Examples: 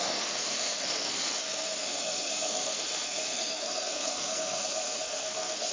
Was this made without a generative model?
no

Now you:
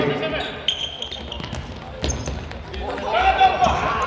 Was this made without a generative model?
yes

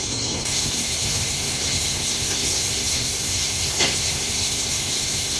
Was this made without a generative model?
no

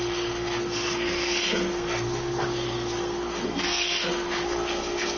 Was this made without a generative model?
no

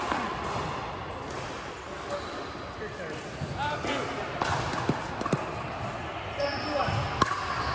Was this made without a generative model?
yes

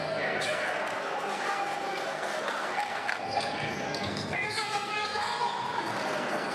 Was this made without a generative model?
no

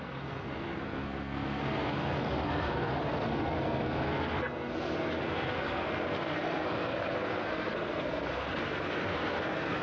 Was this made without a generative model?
no